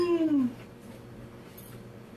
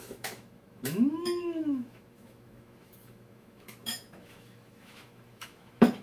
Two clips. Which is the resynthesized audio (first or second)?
second